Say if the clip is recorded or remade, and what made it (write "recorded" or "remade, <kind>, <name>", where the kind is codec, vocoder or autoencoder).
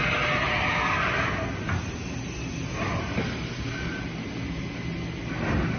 recorded